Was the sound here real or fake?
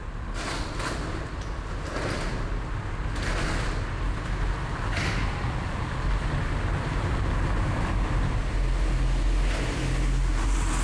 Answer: real